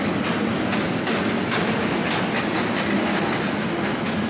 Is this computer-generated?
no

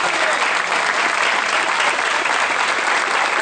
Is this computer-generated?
no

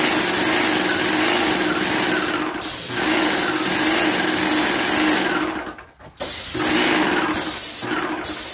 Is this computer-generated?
no